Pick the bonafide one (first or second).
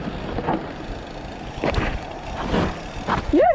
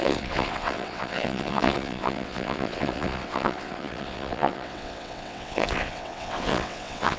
first